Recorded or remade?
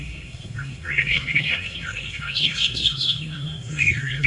remade